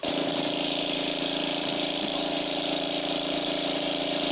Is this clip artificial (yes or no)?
yes